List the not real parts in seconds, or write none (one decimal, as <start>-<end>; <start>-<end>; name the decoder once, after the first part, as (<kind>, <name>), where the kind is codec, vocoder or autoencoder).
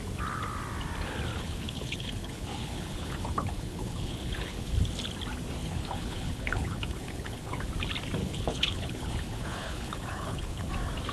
1.3-4.7 (codec, HILCodec); 5.6-7.6; 8.2-10.7